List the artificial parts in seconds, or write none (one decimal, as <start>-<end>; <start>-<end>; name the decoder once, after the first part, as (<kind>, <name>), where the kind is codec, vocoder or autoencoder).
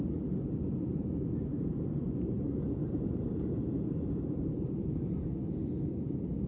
1.5-5.3 (vocoder, BigVGAN v2)